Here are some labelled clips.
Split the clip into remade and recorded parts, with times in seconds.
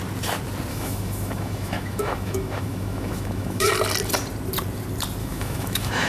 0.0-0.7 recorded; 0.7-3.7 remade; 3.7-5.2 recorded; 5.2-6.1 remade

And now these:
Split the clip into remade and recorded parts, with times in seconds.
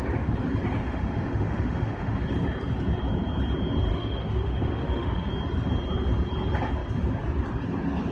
0.0-0.8 recorded; 0.8-2.2 remade; 2.2-3.9 recorded; 3.9-5.3 remade; 5.3-8.1 recorded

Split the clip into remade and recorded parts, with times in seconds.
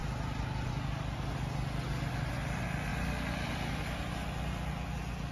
0.0-5.3 recorded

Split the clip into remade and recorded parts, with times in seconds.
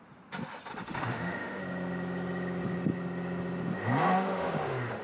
0.0-0.7 recorded; 0.7-1.6 remade; 1.6-4.1 recorded; 4.1-5.0 remade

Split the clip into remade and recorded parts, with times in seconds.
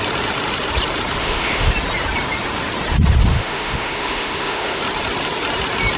0.0-1.2 recorded; 1.2-1.7 remade; 1.7-3.3 recorded; 3.3-4.8 remade; 4.8-6.0 recorded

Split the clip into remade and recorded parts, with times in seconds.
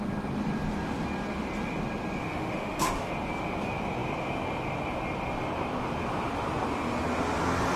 0.0-2.2 recorded; 2.2-3.1 remade; 3.1-7.8 recorded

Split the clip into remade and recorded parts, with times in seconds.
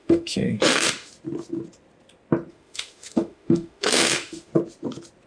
0.0-1.1 remade; 1.1-2.5 recorded; 2.5-4.5 remade; 4.5-5.3 recorded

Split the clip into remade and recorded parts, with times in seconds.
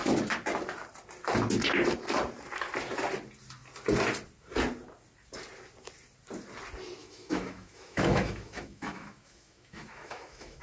0.0-7.0 recorded; 7.0-10.6 remade